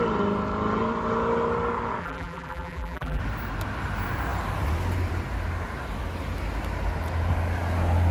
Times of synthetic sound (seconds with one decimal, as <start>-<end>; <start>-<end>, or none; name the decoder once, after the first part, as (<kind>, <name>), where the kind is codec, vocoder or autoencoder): 2.0-3.2 (vocoder, BigVGAN v2)

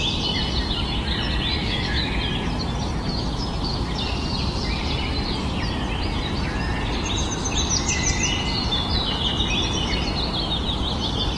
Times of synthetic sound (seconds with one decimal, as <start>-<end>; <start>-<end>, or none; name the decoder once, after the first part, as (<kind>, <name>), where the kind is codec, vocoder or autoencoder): 1.6-2.1 (autoencoder, DAC-VAE)

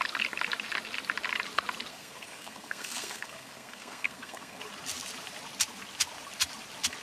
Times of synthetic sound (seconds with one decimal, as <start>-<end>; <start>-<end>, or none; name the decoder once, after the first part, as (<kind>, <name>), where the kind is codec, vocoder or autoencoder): 1.9-4.6 (codec, SNAC)

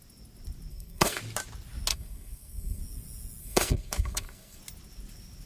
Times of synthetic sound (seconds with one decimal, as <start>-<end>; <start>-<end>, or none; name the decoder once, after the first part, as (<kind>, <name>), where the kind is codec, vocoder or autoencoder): 0.7-1.2 (codec, SNAC); 1.9-2.8; 3.4-4.6

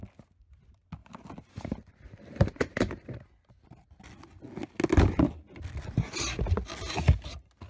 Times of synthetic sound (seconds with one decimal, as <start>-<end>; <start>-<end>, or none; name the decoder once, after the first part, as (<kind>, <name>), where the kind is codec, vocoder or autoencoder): 1.0-3.7 (vocoder, BigVGAN v2)

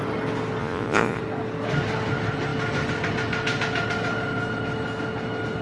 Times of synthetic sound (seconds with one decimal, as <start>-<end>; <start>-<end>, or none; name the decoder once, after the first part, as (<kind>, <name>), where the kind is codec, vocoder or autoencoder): 0.6-1.2 (vocoder, Vocos)

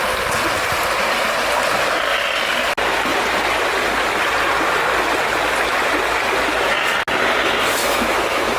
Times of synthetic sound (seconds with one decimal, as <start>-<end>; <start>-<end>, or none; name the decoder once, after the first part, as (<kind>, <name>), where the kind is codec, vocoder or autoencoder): 7.8-8.6 (autoencoder, DAC-VAE)